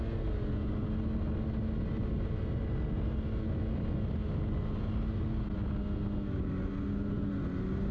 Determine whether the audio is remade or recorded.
recorded